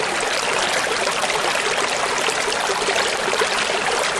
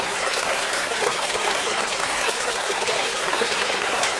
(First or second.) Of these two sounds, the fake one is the second